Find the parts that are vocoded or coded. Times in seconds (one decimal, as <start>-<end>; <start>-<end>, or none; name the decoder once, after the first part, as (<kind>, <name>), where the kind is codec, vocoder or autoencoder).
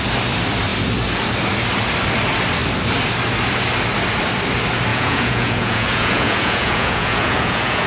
4.9-7.9 (vocoder, Vocos)